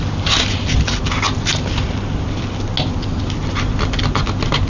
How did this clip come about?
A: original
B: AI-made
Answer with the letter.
A